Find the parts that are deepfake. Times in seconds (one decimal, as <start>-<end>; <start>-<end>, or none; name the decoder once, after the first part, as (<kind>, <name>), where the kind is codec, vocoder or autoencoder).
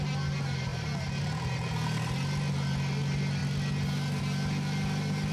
none